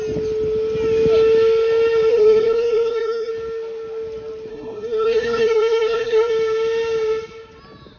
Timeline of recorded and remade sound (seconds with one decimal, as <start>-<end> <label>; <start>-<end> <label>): 0.0-2.1 recorded; 2.1-3.3 remade; 3.3-4.5 recorded; 4.5-6.3 remade; 6.3-8.0 recorded